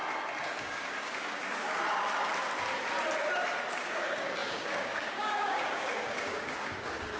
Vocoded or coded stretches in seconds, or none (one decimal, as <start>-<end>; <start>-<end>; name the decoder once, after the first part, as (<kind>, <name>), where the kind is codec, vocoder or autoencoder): 0.6-1.8 (codec, DAC); 3.8-7.2